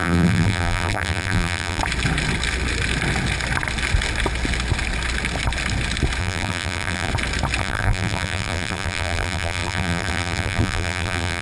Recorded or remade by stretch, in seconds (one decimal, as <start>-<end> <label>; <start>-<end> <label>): 0.0-1.8 remade; 1.8-6.2 recorded; 6.2-7.1 remade; 7.1-7.6 recorded; 7.6-11.4 remade